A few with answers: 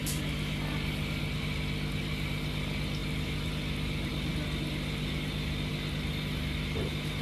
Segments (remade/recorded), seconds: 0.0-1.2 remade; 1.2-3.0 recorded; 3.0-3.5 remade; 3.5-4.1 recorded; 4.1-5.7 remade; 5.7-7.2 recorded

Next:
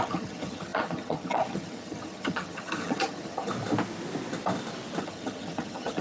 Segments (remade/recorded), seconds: 0.0-3.5 remade; 3.5-5.0 recorded; 5.0-6.0 remade

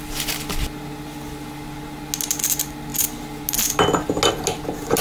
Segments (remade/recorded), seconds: 0.0-5.0 recorded